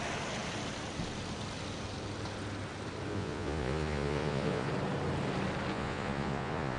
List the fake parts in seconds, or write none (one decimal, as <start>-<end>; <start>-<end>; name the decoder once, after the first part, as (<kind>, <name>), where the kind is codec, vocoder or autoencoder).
3.1-4.7 (vocoder, Vocos); 5.7-6.8